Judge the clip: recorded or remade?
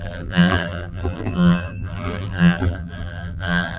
remade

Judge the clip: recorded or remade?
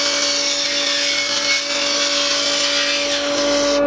recorded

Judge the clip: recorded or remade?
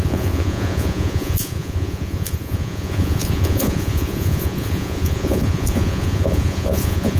remade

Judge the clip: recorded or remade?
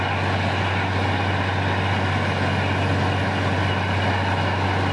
recorded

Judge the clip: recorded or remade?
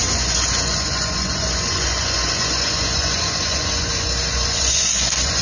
remade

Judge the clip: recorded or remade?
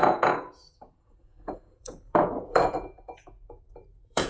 remade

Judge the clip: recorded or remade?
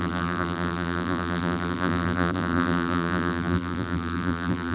remade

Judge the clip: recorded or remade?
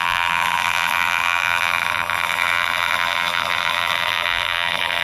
remade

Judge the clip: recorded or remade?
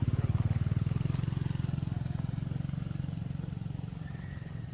recorded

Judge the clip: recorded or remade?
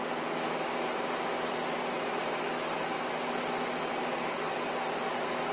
recorded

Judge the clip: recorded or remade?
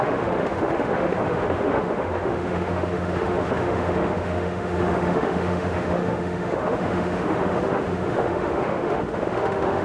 remade